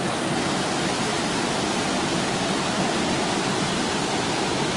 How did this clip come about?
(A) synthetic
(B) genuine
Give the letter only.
B